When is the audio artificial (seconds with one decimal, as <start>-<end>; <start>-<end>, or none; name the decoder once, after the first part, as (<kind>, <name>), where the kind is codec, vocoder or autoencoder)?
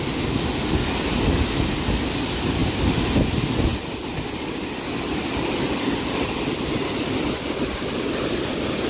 none